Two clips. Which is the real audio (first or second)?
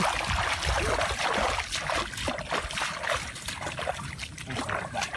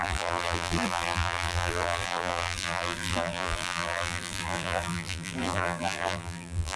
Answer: first